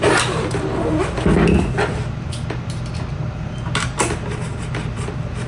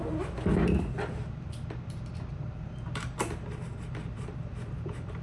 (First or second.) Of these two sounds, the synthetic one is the second